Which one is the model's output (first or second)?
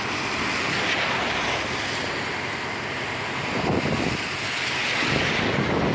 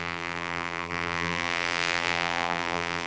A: second